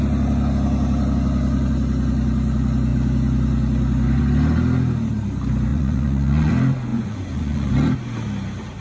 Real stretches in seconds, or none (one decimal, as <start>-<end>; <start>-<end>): 0.0-5.7; 6.5-6.9; 7.7-8.8